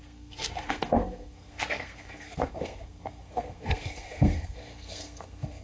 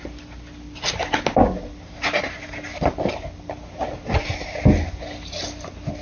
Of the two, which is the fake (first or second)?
first